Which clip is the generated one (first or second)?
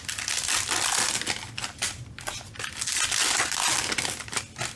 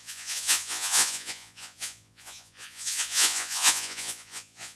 second